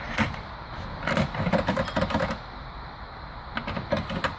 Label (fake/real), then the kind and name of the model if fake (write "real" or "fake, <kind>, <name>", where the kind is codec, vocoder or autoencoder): real